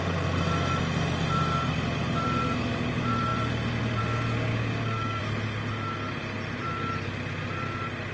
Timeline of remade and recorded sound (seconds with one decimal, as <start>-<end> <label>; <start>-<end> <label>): 0.0-4.5 recorded; 4.5-5.2 remade; 5.2-8.1 recorded